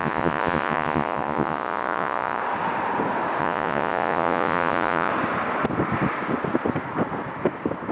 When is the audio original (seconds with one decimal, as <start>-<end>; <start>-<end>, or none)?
2.4-3.4; 5.1-7.9